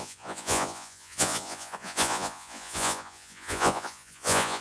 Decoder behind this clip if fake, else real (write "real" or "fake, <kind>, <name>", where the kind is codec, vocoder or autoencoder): fake, vocoder, Vocos